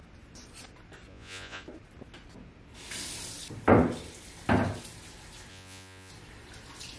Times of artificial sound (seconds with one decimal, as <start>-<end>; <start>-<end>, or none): 1.1-1.6; 5.5-6.1